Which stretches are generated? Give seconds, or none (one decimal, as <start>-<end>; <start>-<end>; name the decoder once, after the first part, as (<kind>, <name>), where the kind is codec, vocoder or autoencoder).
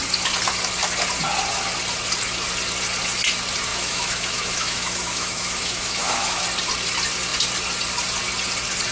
3.7-6.4 (autoencoder, DAC-VAE)